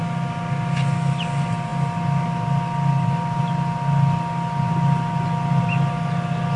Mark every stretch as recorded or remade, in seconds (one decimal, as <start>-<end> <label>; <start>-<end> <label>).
0.0-6.6 recorded